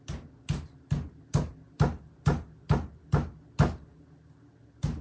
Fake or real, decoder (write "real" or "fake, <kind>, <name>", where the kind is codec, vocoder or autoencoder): real